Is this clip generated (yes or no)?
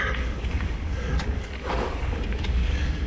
yes